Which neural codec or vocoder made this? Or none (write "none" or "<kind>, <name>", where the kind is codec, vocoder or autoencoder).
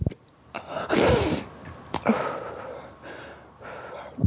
none